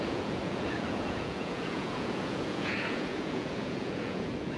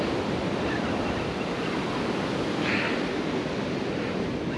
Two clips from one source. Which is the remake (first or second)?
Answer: first